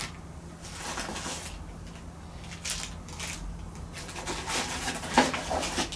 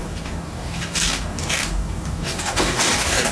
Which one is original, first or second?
first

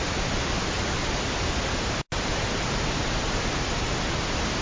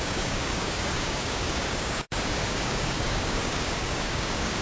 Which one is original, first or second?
first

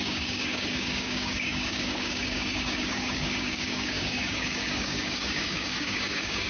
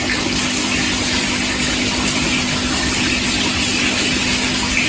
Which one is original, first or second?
second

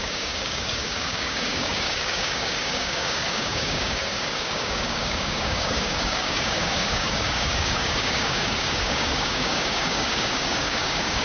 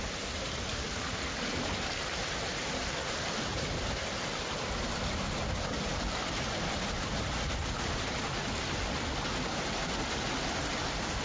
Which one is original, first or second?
second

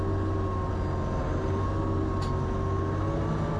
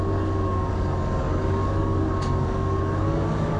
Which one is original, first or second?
first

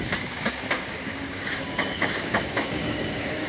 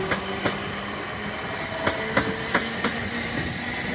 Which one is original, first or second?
second